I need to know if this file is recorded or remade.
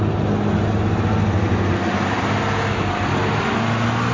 recorded